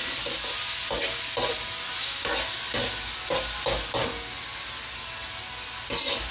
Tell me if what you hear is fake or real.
real